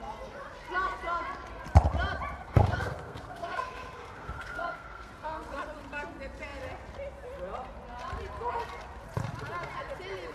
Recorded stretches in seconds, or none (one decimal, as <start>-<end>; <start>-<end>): 0.0-2.4; 5.1-10.3